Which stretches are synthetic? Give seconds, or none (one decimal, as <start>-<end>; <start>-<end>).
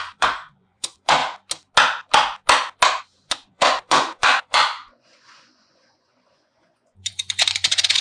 0.0-1.2; 3.0-8.0